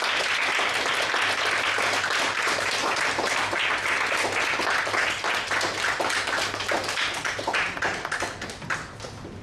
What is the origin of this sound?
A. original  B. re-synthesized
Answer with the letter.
A